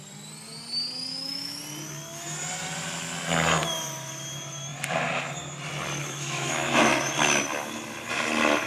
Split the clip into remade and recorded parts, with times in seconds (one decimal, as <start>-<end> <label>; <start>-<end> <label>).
0.0-1.1 recorded; 1.1-1.6 remade; 1.6-6.0 recorded; 6.0-6.8 remade; 6.8-8.7 recorded